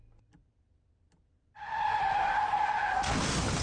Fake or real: real